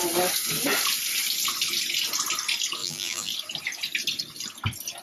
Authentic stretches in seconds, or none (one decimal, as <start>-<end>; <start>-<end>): 0.0-2.8; 3.3-5.0